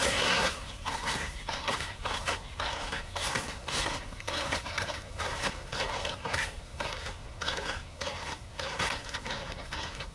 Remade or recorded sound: remade